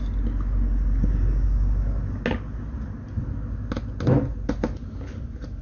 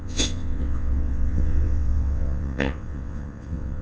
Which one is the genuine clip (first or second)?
first